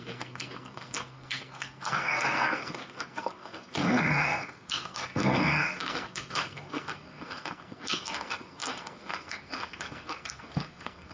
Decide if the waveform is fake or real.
fake